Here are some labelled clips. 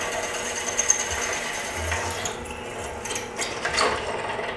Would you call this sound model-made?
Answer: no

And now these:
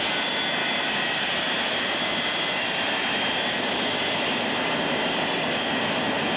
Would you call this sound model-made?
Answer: no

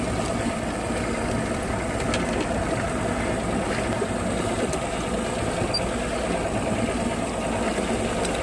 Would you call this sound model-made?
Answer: no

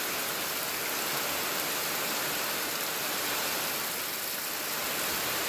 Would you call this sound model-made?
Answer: no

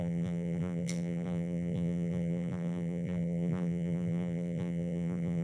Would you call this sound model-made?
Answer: yes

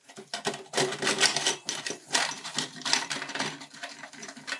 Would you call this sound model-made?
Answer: no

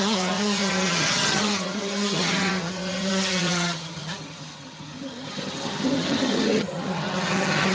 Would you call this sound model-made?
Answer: yes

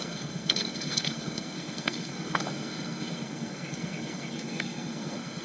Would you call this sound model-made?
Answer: yes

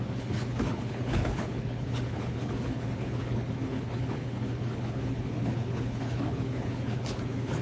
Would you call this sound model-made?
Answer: yes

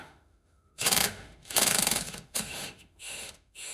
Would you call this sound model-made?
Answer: yes